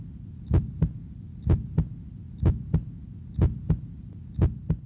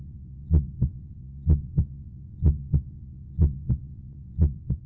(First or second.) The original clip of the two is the first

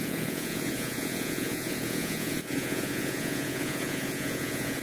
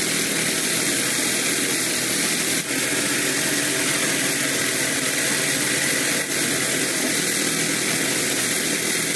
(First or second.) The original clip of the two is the second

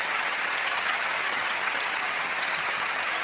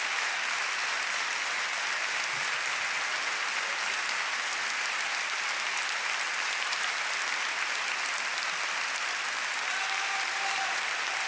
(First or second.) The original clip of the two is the second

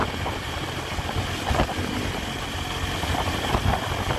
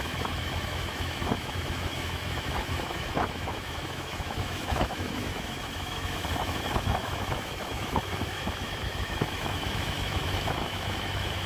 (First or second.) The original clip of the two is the first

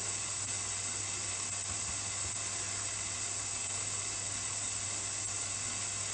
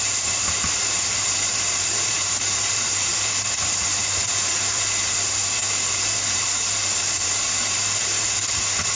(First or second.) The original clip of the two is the first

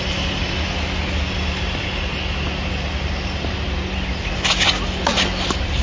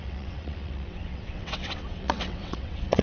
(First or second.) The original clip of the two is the first